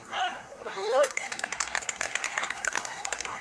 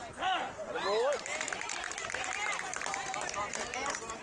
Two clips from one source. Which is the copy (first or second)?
first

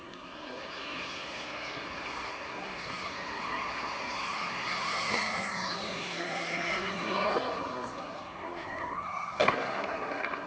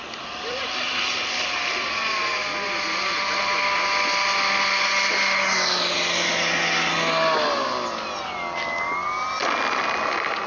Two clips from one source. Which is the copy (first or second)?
first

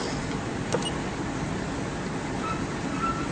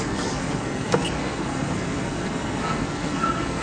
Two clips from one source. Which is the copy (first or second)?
second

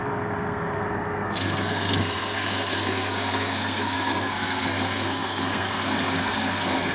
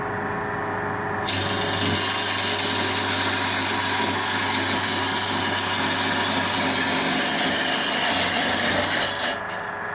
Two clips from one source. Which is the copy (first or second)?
first